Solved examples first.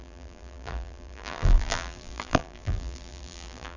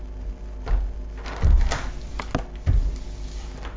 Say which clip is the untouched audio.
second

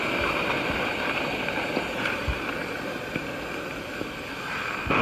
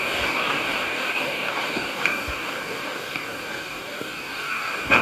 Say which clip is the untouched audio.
first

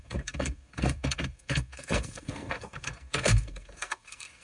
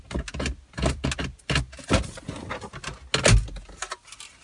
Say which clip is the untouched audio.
second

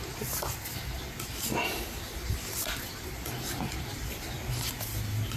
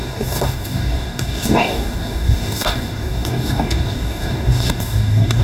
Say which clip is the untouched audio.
first